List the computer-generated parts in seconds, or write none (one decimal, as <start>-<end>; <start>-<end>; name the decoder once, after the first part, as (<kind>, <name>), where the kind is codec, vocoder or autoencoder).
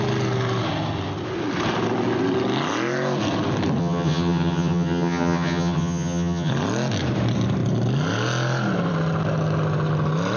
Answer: 3.8-6.5 (vocoder, HiFi-GAN)